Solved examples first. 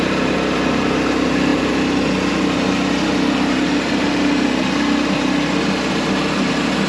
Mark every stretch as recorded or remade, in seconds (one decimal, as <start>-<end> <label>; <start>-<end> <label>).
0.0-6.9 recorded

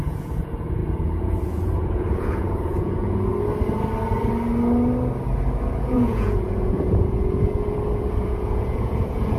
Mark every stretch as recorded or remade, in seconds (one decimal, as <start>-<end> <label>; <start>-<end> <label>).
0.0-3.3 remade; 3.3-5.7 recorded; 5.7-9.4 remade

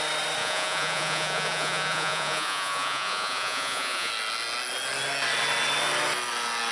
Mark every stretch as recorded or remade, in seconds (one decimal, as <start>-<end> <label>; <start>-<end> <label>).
0.0-0.4 recorded; 0.4-4.1 remade; 4.1-6.7 recorded